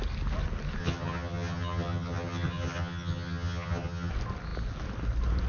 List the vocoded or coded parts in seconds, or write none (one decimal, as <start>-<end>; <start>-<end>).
0.8-4.1